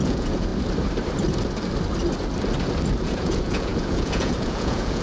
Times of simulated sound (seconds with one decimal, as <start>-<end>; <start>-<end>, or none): 0.0-0.5; 3.0-5.0